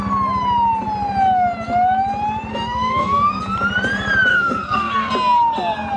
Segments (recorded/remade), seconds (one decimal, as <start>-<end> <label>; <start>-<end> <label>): 0.0-2.5 recorded; 2.5-3.4 remade; 3.4-4.3 recorded; 4.3-5.1 remade; 5.1-6.0 recorded